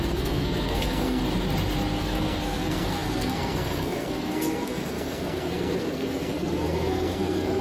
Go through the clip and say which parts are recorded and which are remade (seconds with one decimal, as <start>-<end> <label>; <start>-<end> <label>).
0.0-1.2 remade; 1.2-2.0 recorded; 2.0-7.6 remade